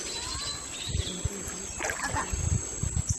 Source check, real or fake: real